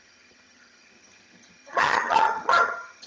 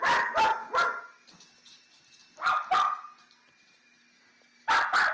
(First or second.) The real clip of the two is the second